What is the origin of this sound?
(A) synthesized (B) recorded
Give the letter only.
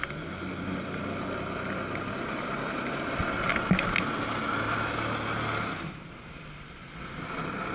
B